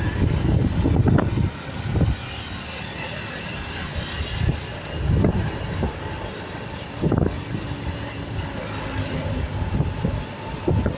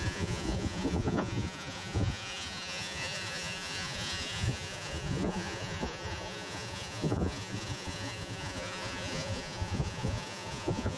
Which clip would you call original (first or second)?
first